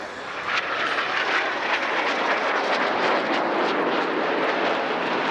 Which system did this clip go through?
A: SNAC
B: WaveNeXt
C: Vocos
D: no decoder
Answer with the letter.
D